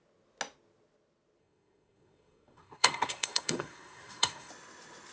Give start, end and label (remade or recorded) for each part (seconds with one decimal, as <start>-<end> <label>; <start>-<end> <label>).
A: 0.0-1.4 recorded; 1.4-4.5 remade; 4.5-5.1 recorded